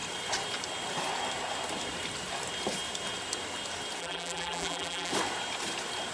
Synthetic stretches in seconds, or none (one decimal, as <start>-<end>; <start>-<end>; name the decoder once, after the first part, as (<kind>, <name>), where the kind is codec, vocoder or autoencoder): 4.0-5.1 (vocoder, BigVGAN v2)